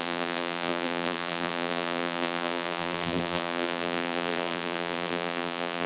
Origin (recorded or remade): remade